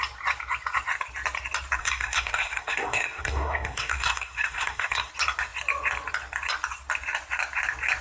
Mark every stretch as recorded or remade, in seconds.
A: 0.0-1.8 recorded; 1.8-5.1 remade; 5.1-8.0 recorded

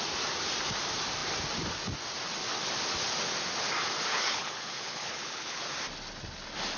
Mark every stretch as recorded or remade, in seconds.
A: 0.0-4.1 recorded; 4.1-5.6 remade; 5.6-6.8 recorded

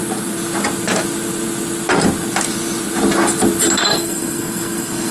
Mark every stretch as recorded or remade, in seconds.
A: 0.0-3.8 recorded; 3.8-5.1 remade